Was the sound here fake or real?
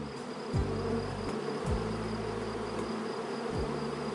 real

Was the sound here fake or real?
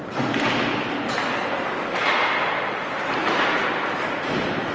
real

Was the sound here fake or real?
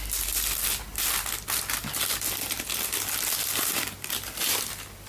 real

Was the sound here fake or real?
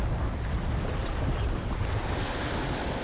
real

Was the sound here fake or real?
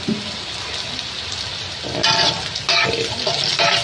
real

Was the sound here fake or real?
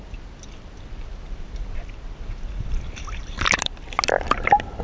real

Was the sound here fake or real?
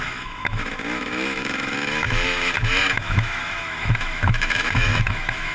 fake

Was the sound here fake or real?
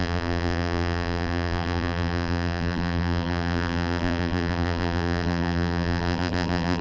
fake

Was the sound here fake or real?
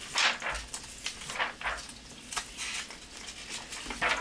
real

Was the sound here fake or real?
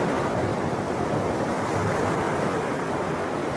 real